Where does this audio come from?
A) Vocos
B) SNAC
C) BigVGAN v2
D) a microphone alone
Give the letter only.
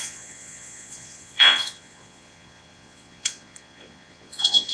A